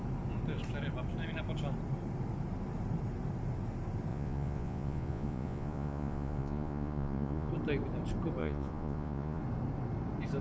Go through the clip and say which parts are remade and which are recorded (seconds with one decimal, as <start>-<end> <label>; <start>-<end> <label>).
0.0-4.1 recorded; 4.1-7.5 remade; 7.5-8.4 recorded; 8.4-9.4 remade; 9.4-10.4 recorded